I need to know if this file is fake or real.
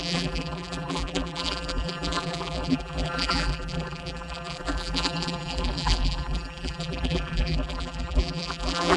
fake